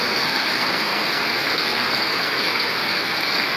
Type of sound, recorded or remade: remade